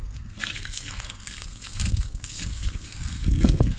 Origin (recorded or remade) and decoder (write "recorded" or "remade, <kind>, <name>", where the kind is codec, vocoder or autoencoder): remade, codec, SNAC